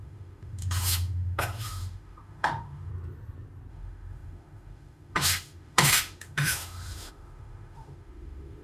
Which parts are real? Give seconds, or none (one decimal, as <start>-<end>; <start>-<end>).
2.9-3.7